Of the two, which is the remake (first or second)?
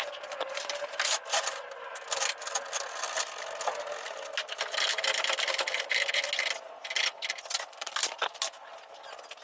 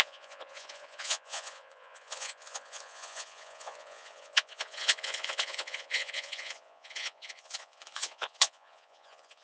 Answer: second